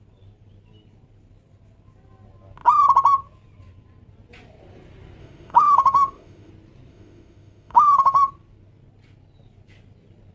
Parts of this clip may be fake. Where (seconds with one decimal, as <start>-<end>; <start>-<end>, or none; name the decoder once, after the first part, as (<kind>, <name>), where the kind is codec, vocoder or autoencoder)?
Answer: 5.2-6.5 (autoencoder, DAC-VAE); 6.9-8.3